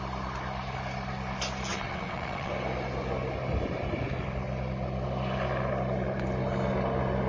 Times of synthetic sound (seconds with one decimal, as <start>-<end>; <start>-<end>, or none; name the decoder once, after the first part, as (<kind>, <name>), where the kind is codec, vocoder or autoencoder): 1.7-2.5 (vocoder, WaveNeXt)

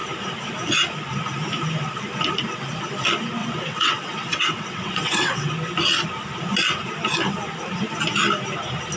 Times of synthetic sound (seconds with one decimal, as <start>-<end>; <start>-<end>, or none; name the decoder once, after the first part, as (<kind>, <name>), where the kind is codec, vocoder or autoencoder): 3.4-5.5 (vocoder, WaveNeXt)

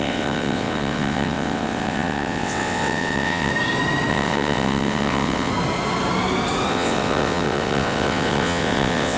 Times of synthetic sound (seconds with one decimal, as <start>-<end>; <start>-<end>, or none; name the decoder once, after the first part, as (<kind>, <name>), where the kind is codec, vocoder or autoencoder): 0.0-3.5 (vocoder, WaveNeXt); 4.1-5.5; 6.7-9.2

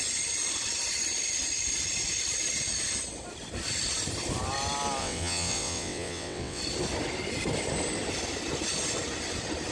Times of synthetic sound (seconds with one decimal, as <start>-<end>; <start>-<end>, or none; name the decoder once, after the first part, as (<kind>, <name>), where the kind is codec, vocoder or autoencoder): 5.0-6.6 (vocoder, WaveNeXt)

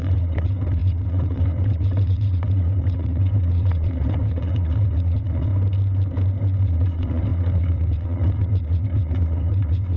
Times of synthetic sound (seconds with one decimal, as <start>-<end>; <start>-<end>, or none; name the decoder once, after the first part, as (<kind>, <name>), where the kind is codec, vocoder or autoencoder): 0.0-5.5 (vocoder, WaveNeXt); 6.6-10.0